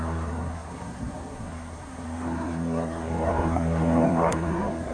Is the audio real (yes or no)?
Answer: no